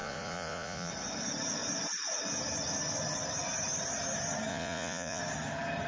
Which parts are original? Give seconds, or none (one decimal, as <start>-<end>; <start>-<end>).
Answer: 0.9-4.5; 5.2-5.9